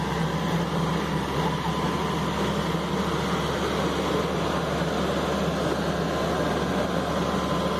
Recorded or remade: recorded